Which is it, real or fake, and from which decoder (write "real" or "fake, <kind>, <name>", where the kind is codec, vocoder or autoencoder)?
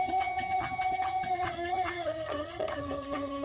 fake, vocoder, HiFi-GAN